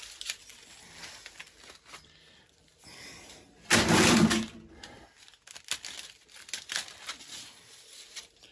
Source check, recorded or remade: recorded